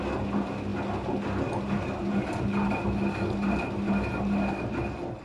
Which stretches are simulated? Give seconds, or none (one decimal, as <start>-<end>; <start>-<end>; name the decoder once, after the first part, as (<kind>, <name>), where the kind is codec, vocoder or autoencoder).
none